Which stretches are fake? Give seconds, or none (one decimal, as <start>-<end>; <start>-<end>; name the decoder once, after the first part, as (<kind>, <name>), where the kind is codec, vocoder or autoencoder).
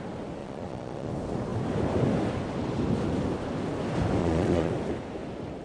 0.4-1.1 (vocoder, Vocos); 4.2-4.7